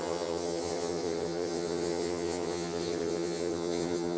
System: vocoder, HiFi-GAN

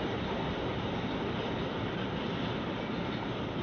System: none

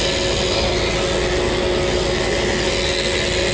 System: none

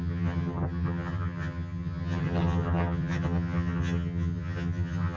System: vocoder, HiFi-GAN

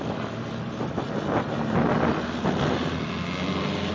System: none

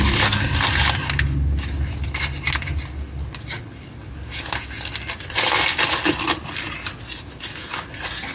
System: none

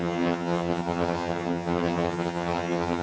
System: vocoder, HiFi-GAN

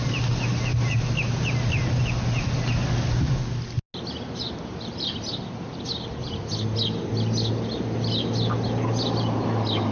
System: none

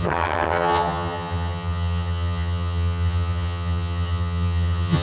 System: vocoder, HiFi-GAN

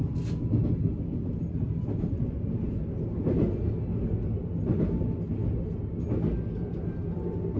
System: none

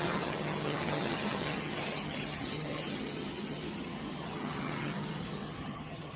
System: vocoder, HiFi-GAN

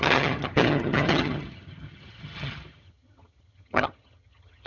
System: vocoder, HiFi-GAN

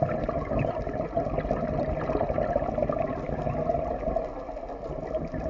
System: none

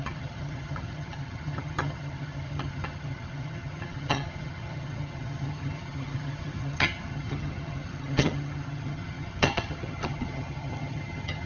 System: vocoder, HiFi-GAN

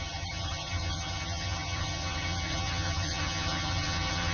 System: vocoder, HiFi-GAN